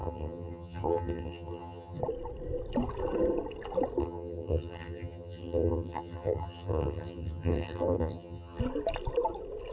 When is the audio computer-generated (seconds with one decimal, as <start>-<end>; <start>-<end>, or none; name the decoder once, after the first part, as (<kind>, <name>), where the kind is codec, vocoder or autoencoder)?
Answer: 0.0-2.0 (vocoder, HiFi-GAN); 4.0-8.6